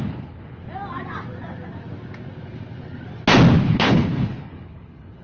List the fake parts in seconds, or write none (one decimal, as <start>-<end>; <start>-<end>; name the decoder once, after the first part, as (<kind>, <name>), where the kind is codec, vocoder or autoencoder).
0.0-0.6 (codec, HILCodec); 3.7-5.2